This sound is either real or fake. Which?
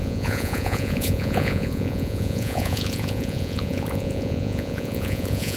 fake